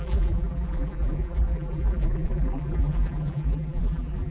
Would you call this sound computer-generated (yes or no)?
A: yes